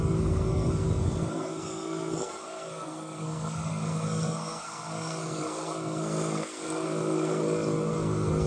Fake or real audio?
fake